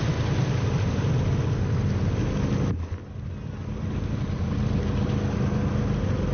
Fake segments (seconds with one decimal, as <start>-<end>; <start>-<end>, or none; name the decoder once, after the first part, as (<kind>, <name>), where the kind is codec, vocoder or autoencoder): none